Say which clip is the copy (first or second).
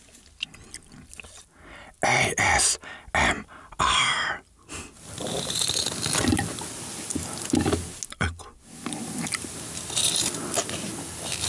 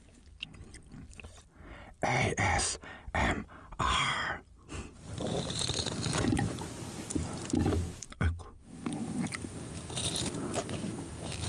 second